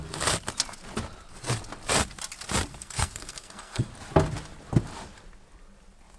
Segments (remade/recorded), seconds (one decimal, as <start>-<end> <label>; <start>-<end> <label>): 0.0-2.7 recorded; 2.7-3.9 remade; 3.9-6.2 recorded